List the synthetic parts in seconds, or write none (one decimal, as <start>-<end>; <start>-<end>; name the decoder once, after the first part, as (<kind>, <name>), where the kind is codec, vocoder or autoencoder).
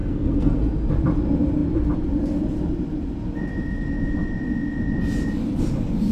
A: 0.0-0.6 (codec, SNAC)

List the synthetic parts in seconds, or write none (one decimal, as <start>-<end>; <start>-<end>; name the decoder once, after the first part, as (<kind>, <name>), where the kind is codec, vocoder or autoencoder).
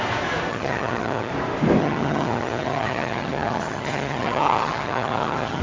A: 0.5-1.3 (vocoder, HiFi-GAN); 1.8-5.6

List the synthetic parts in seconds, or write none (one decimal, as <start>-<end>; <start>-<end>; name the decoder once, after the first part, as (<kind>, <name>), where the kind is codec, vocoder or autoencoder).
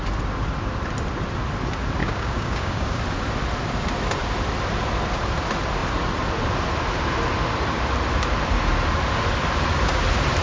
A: 2.0-3.0 (codec, DAC)